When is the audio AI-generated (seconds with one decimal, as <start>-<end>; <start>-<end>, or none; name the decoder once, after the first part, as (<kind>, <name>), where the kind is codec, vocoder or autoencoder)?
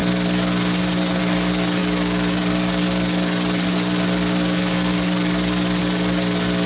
none